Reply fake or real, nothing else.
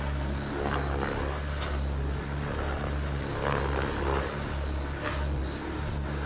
real